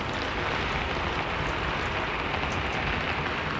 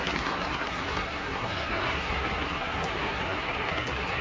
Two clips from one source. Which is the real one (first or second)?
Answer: first